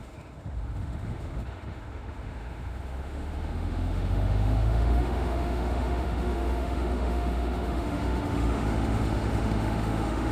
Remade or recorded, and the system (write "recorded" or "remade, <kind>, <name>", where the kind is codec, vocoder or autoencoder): remade, autoencoder, DAC-VAE